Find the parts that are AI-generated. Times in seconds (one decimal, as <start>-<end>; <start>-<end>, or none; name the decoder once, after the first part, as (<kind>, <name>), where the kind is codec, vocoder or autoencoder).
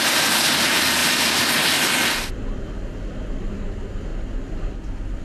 none